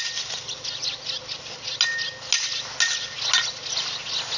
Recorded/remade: recorded